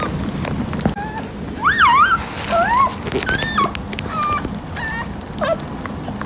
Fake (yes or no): no